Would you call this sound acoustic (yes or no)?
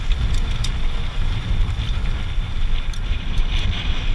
yes